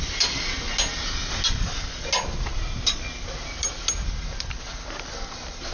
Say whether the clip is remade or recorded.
recorded